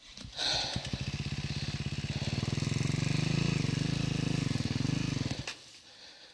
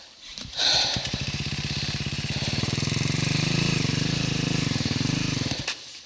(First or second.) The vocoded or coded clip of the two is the second